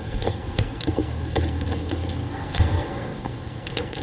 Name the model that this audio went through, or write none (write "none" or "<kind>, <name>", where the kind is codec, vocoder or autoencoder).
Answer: codec, SNAC